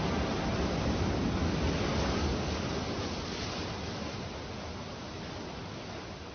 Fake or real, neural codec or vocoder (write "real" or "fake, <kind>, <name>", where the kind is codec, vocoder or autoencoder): real